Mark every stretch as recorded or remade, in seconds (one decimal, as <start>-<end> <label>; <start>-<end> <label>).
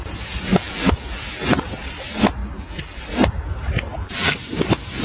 0.0-0.5 recorded; 0.5-1.6 remade; 1.6-2.4 recorded; 2.4-3.0 remade; 3.0-3.9 recorded; 3.9-4.4 remade; 4.4-5.0 recorded